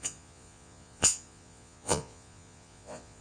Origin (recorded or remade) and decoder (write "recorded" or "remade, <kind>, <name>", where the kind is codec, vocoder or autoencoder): remade, vocoder, Vocos